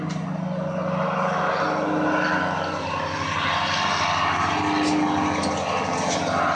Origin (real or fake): real